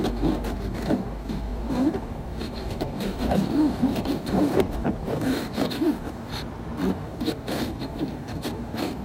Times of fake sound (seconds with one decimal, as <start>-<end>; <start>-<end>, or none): 0.0-6.3; 6.9-9.0